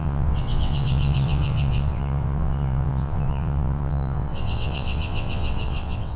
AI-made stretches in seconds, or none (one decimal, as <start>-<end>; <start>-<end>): 0.0-6.2